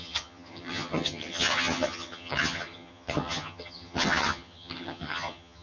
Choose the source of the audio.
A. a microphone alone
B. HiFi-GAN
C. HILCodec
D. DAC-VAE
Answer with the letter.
B